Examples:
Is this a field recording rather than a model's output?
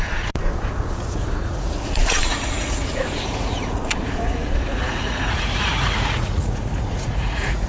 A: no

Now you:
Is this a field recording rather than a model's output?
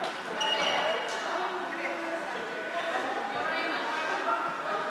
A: yes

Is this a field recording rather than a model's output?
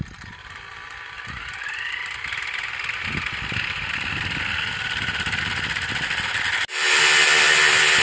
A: yes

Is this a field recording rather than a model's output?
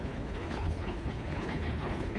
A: no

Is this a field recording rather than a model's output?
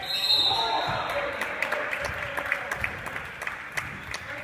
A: yes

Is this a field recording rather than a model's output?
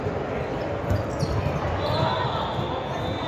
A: yes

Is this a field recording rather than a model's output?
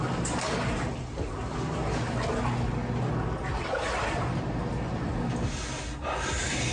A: yes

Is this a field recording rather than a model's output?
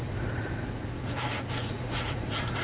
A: no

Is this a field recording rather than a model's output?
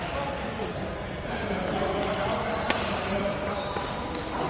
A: no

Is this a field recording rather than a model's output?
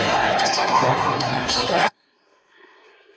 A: no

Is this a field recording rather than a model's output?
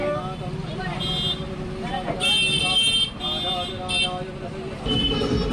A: yes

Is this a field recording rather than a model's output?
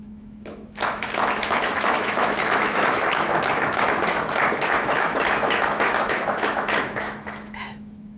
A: no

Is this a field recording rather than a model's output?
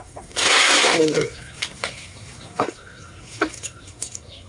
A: no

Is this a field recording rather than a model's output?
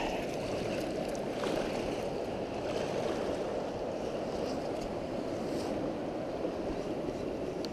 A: yes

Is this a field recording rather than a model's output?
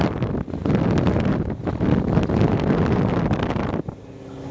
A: yes